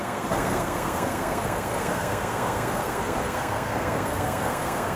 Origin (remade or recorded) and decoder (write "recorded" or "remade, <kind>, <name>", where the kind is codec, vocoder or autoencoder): remade, codec, SNAC